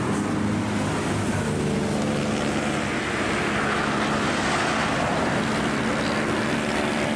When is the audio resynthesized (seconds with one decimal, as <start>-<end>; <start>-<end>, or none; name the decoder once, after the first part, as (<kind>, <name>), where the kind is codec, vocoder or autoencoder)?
4.8-5.4 (vocoder, BigVGAN v2)

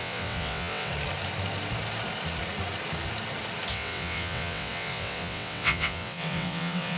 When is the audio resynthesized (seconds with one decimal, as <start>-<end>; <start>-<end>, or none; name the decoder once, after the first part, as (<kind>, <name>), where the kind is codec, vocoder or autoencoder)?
0.0-0.9 (vocoder, WaveNeXt); 3.7-7.0

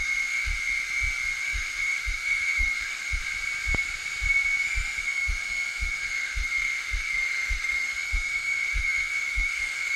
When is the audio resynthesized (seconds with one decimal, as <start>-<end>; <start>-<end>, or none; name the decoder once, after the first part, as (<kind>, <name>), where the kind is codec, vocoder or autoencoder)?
0.0-0.5 (autoencoder, DAC-VAE); 1.4-3.2; 5.0-10.0

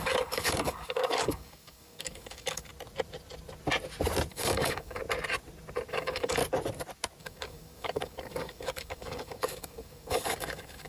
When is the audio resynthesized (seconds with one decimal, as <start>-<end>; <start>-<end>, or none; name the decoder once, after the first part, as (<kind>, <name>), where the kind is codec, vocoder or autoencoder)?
0.0-2.7 (codec, DAC); 4.3-5.0; 5.9-6.4; 7.2-10.9

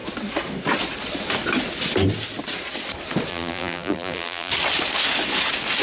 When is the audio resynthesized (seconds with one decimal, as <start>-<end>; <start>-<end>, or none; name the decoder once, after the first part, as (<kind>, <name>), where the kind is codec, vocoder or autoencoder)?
3.3-4.5 (vocoder, BigVGAN v2)